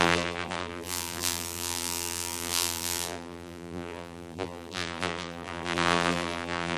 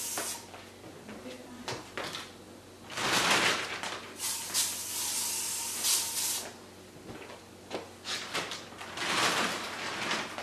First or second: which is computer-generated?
first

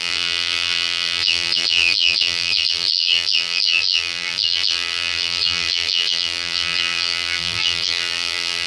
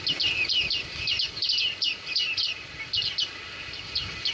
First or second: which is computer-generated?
first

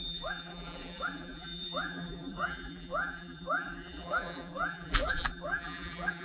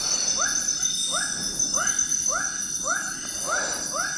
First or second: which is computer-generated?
first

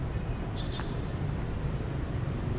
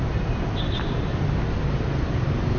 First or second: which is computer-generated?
first